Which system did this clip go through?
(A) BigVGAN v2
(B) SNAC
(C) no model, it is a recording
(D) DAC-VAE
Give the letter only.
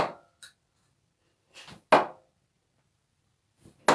C